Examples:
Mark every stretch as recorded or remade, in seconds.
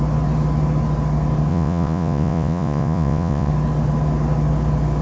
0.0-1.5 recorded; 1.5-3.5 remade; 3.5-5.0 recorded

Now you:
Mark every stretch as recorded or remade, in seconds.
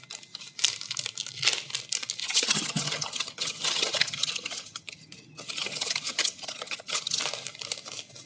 0.0-2.2 recorded; 2.2-7.2 remade; 7.2-8.3 recorded